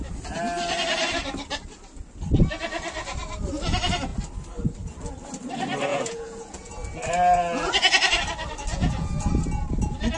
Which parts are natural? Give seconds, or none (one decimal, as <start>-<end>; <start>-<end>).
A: 0.0-5.9; 6.7-8.7; 9.3-10.2